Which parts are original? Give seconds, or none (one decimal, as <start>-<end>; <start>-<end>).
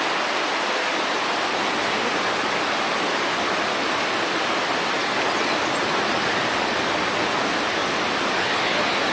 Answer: 0.0-9.1